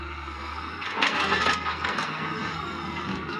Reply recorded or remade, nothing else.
remade